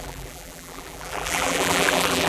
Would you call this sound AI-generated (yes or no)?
yes